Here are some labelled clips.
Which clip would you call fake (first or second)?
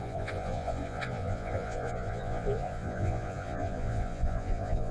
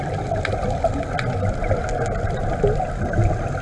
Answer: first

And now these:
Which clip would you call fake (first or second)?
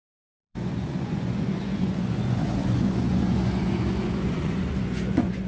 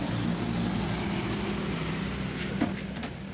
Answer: first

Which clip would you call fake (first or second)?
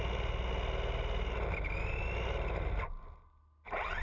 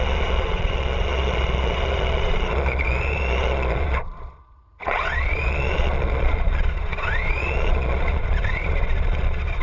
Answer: second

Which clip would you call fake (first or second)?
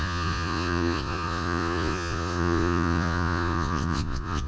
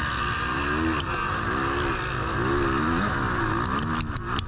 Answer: first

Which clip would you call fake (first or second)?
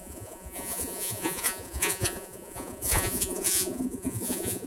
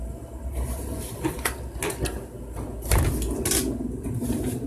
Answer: first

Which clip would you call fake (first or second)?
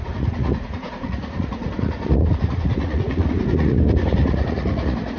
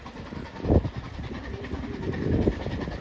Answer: first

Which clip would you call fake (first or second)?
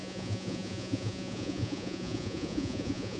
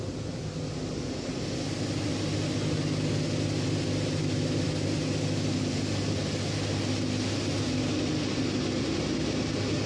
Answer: first